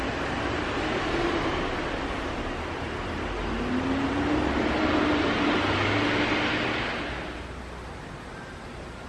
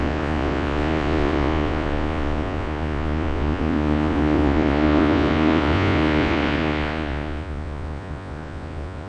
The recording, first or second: first